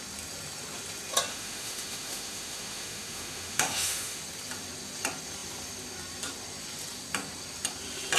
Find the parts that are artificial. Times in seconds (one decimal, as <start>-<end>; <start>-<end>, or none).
1.3-4.2